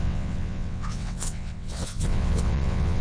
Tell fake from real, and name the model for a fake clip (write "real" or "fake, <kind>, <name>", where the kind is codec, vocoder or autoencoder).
fake, vocoder, WaveNeXt